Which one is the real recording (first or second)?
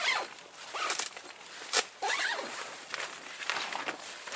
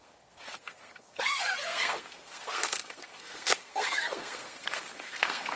first